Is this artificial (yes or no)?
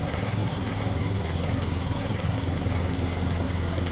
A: yes